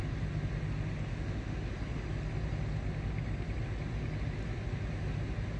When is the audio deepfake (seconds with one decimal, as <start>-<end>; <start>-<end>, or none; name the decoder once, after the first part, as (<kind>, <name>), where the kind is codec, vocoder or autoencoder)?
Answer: 1.1-1.7 (autoencoder, DAC-VAE)